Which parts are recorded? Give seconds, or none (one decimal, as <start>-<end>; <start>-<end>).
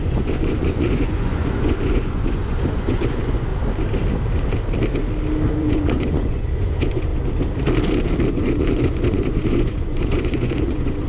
3.5-5.5; 7.1-8.3